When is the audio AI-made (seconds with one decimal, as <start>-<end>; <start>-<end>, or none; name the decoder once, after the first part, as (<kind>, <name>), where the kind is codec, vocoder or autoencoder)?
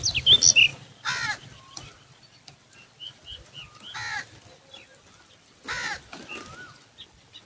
none